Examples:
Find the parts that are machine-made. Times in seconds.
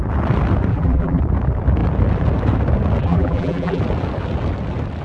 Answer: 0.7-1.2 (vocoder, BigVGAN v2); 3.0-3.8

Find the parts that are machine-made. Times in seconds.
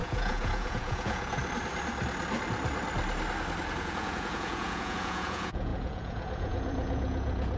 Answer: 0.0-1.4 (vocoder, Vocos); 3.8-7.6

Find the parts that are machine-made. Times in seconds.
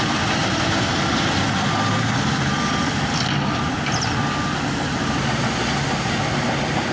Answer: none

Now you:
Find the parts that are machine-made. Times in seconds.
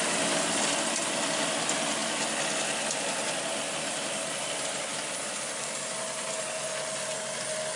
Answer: none